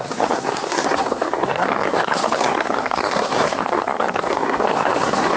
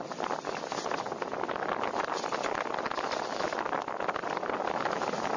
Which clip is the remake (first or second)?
first